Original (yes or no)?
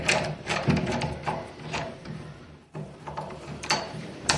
no